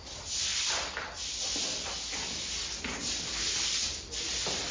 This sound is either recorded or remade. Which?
recorded